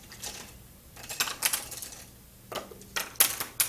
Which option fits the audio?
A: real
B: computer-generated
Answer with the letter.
A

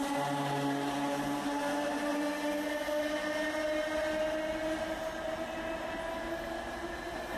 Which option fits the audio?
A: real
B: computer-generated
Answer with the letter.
A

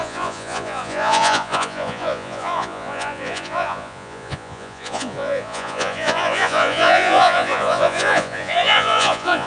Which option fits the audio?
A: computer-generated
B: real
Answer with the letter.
A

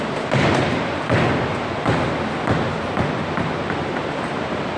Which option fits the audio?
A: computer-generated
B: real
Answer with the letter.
B